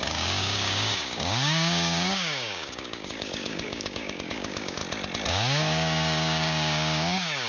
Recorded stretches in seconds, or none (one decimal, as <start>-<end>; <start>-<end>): 4.8-5.3